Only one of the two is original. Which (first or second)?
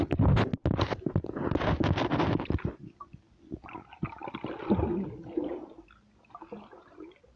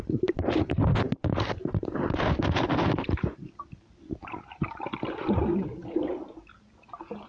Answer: first